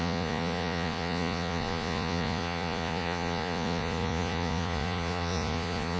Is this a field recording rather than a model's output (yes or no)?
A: no